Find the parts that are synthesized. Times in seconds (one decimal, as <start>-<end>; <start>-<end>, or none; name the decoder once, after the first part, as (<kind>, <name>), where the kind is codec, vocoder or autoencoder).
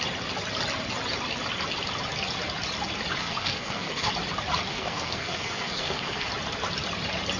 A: 3.2-4.1 (codec, SNAC); 4.7-6.3